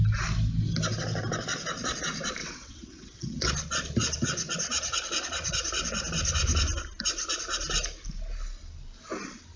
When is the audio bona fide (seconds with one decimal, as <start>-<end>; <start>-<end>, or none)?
0.0-2.4; 3.5-9.6